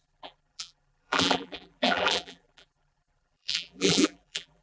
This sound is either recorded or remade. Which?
remade